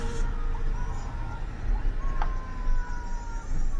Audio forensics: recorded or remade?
recorded